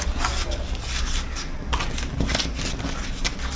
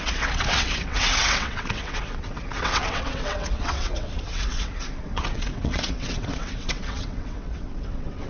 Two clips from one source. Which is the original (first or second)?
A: first